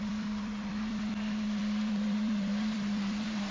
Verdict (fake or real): fake